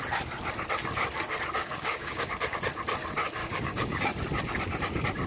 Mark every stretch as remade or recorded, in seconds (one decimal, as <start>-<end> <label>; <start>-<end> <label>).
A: 0.0-1.6 recorded; 1.6-2.3 remade; 2.3-3.4 recorded; 3.4-4.0 remade; 4.0-5.3 recorded